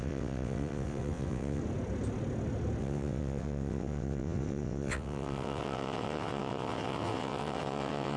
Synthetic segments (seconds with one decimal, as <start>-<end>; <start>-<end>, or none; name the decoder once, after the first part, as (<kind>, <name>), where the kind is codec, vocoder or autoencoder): 0.0-1.6 (vocoder, WaveNeXt); 2.8-8.2